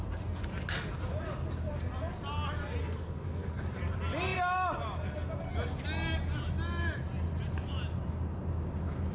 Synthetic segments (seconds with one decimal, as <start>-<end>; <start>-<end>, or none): 2.8-3.6

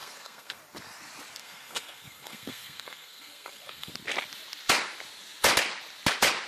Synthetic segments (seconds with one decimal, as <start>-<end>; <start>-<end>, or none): 0.0-0.6; 1.4-3.9

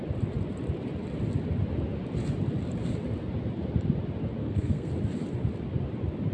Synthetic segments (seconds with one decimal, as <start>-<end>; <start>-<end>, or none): 4.4-4.9

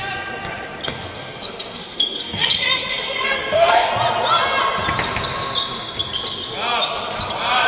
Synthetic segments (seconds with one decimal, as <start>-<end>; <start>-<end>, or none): 0.8-3.9

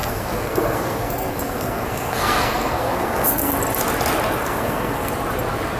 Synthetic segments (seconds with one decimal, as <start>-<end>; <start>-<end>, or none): 0.0-3.5; 4.4-5.1

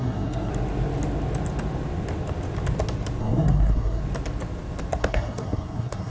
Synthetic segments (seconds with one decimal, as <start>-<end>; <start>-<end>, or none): 0.0-0.5; 3.2-4.0; 5.0-6.1

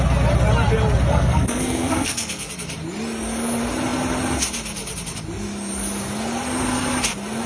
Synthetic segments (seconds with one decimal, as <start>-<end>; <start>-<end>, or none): 1.1-2.5